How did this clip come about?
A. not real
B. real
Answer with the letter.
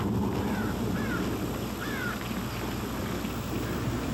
B